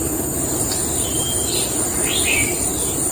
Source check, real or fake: real